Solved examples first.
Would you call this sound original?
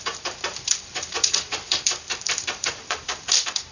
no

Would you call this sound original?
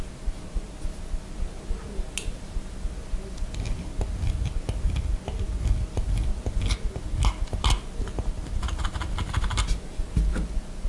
yes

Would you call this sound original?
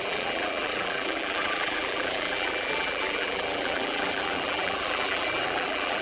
no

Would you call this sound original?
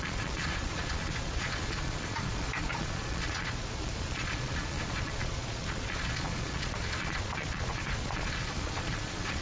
no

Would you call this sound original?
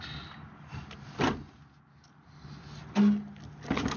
yes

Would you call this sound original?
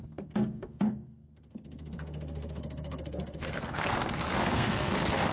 no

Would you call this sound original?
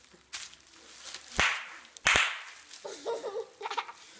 yes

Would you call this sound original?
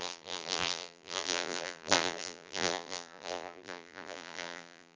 no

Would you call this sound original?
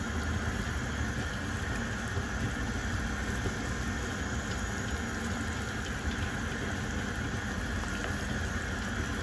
yes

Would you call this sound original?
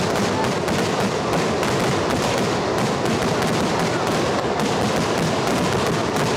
yes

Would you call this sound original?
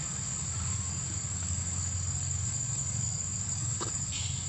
no